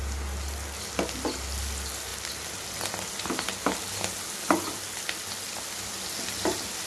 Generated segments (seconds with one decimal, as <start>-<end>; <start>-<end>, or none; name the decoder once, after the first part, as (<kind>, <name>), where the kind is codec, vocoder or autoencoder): none